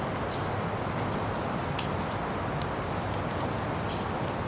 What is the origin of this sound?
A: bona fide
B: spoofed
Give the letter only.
A